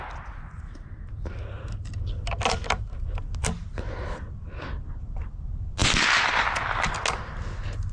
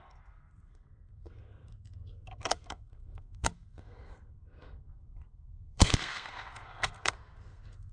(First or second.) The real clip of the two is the first